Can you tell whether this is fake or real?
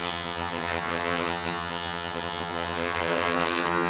fake